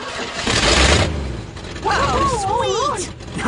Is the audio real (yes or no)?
yes